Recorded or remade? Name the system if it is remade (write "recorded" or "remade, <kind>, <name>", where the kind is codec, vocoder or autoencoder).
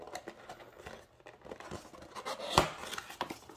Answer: recorded